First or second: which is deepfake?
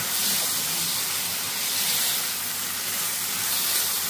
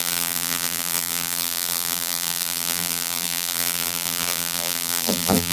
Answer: second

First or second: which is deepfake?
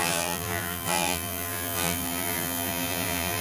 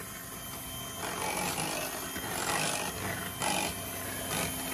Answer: first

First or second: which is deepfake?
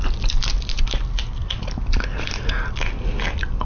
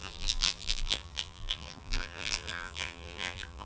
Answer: second